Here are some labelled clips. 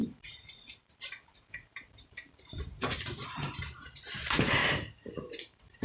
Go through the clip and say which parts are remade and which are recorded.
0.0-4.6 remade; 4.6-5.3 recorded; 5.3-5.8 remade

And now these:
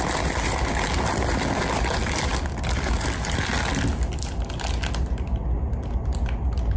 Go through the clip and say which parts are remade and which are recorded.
0.0-6.8 recorded

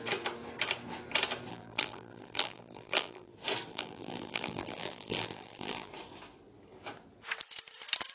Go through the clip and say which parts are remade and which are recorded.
0.0-1.5 recorded; 1.5-3.3 remade; 3.3-3.7 recorded; 3.7-5.9 remade; 5.9-8.1 recorded